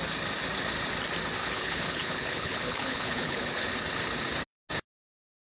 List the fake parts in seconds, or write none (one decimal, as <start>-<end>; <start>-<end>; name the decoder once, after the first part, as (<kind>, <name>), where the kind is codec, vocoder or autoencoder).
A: 1.4-3.7 (codec, HILCodec)